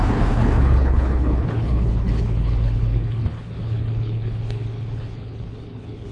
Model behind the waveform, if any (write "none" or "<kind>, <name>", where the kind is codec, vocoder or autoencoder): codec, HILCodec